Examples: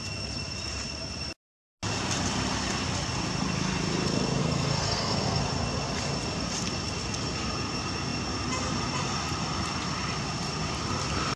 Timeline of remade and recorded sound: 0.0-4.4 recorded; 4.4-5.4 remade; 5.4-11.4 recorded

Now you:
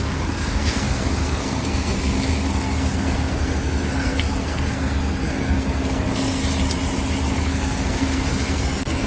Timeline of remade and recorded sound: 0.0-6.4 remade; 6.4-7.3 recorded; 7.3-9.1 remade

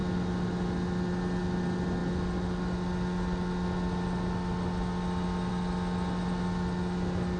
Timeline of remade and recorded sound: 0.0-7.4 recorded

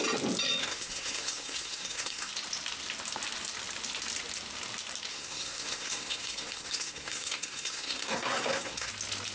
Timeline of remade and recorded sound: 0.0-0.6 recorded; 0.6-2.3 remade; 2.3-5.1 recorded; 5.1-8.9 remade; 8.9-9.3 recorded